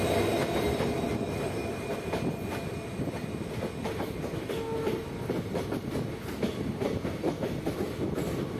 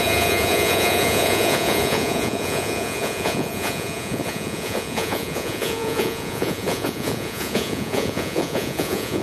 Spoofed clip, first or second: second